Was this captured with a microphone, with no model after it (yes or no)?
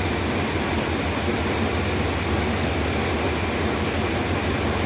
yes